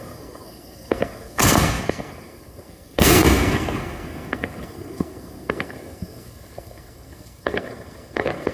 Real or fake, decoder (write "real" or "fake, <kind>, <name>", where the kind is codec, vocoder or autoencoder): fake, codec, SNAC